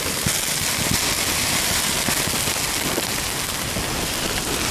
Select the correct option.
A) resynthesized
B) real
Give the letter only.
B